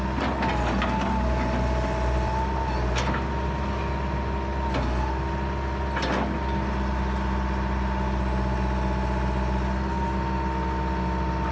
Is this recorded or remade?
recorded